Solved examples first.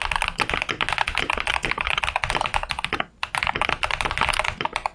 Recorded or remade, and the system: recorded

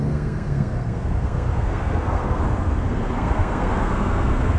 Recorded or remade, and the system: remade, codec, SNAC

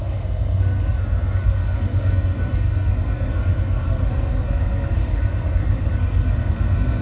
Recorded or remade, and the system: remade, codec, SNAC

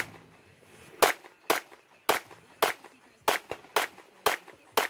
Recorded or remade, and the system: recorded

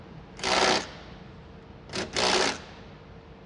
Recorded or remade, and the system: recorded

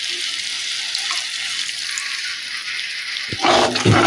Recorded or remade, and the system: recorded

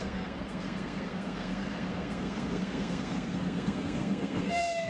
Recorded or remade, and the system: remade, codec, SNAC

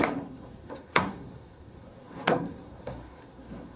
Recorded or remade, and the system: remade, codec, SNAC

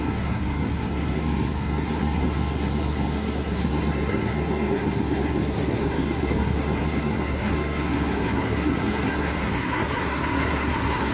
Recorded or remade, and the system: remade, codec, SNAC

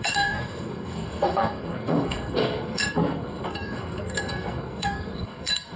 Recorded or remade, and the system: remade, codec, SNAC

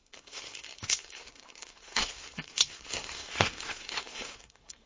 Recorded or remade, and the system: remade, codec, SNAC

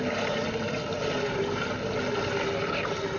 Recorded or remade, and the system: recorded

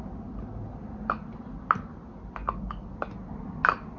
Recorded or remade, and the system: recorded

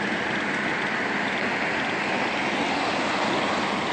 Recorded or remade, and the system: recorded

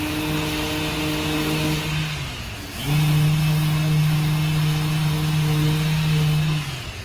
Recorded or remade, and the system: recorded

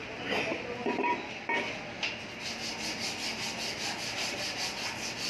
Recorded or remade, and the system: recorded